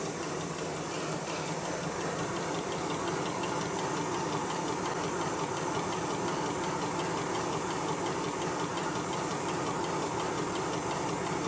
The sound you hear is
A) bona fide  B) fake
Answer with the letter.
A